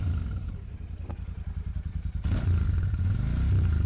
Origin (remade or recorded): remade